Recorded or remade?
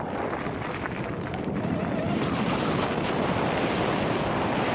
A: recorded